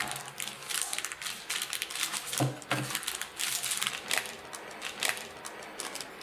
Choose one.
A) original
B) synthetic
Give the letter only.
A